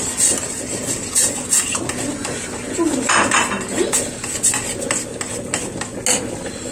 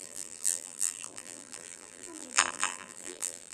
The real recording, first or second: first